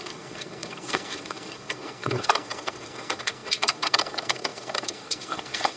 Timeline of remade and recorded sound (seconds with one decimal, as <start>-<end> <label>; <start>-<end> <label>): 0.0-5.8 remade